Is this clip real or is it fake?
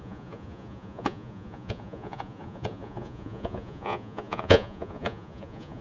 fake